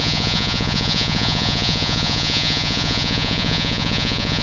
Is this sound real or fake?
fake